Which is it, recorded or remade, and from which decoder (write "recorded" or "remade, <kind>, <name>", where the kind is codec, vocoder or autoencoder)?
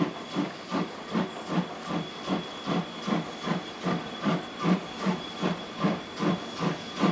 remade, vocoder, BigVGAN v2